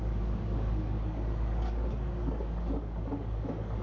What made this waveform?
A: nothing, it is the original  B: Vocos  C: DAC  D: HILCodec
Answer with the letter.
C